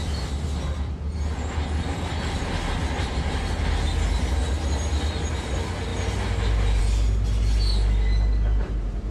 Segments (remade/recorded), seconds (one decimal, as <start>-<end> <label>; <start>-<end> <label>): 0.0-9.1 recorded